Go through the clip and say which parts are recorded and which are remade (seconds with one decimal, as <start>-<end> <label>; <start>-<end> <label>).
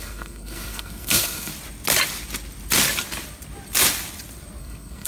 0.0-1.5 remade; 1.5-4.6 recorded; 4.6-5.1 remade